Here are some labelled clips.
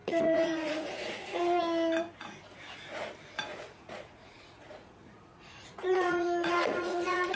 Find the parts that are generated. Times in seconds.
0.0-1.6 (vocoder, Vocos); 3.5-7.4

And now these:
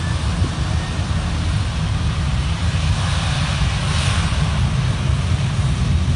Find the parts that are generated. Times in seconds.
none

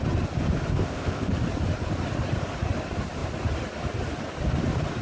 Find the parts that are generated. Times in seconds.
0.7-1.3 (codec, ZipCodec)

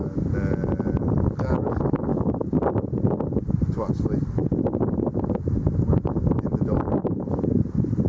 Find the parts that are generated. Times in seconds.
2.1-2.7 (codec, DAC)

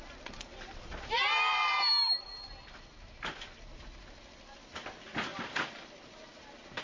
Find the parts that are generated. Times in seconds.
5.3-6.8 (vocoder, BigVGAN v2)